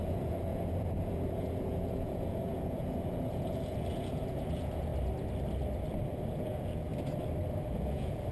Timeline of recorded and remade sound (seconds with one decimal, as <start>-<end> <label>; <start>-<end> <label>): 0.0-4.9 remade; 4.9-6.3 recorded; 6.3-6.9 remade; 6.9-7.7 recorded; 7.7-8.3 remade

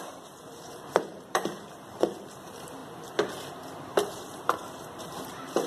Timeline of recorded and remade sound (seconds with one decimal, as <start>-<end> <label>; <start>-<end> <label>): 0.0-2.8 remade; 2.8-4.1 recorded; 4.1-5.7 remade

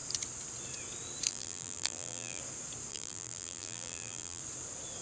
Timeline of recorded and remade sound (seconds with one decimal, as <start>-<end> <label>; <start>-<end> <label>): 0.0-1.3 recorded; 1.3-2.4 remade; 2.4-2.9 recorded; 2.9-4.4 remade; 4.4-5.0 recorded

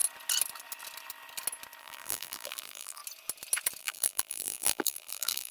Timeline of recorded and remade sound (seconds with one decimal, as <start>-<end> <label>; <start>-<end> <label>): 0.0-1.8 recorded; 1.8-3.0 remade; 3.0-3.8 recorded; 3.8-5.5 remade

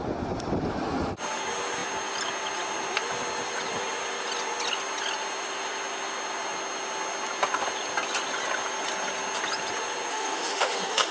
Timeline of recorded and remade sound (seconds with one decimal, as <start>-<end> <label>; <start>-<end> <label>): 0.0-10.1 recorded; 10.1-11.1 remade

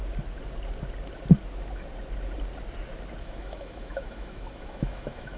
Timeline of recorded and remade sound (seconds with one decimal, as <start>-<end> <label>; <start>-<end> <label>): 0.0-3.2 recorded; 3.2-5.4 remade

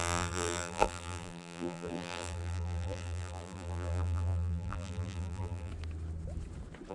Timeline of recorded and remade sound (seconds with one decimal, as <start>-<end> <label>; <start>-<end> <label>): 0.0-5.7 remade; 5.7-6.9 recorded

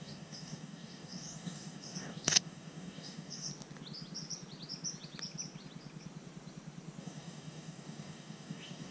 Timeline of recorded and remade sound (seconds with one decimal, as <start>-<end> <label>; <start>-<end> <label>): 0.0-3.5 remade; 3.5-7.0 recorded; 7.0-8.9 remade